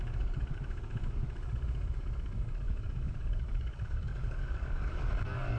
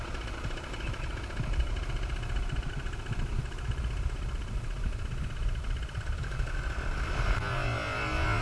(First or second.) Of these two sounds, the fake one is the first